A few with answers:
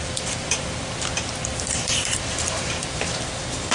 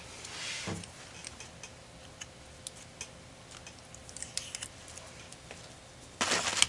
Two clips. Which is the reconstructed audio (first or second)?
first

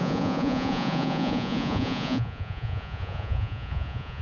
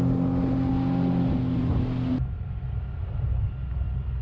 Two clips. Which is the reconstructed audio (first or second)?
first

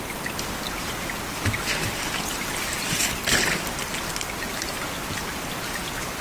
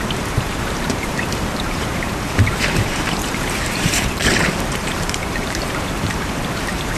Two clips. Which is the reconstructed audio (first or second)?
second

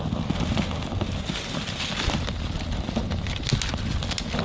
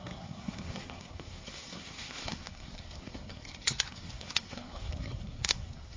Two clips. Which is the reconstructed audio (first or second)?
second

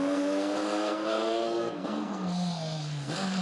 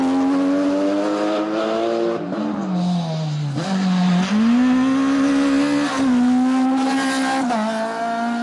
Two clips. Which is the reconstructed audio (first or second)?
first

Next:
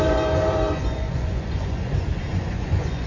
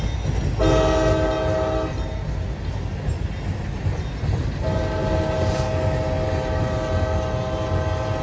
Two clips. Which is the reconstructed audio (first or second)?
first